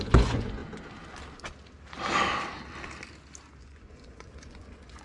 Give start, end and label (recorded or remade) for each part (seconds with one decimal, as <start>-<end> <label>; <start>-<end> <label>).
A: 0.0-0.6 remade; 0.6-3.6 recorded; 3.6-5.0 remade